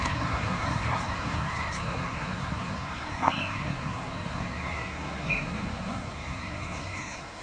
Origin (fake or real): fake